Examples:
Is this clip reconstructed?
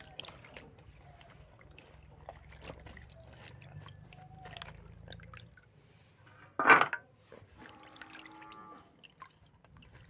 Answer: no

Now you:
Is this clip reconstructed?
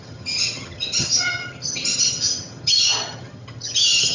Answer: yes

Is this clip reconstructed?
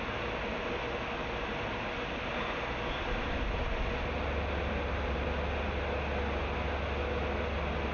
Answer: no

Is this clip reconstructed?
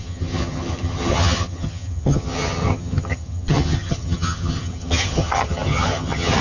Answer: yes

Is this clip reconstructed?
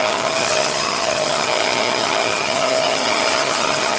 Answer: yes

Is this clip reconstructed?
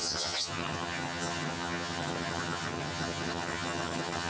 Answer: yes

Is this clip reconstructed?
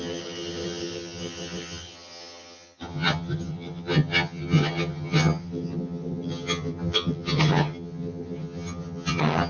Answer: yes